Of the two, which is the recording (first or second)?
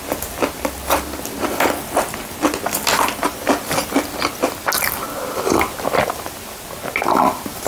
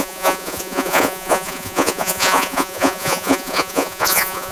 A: first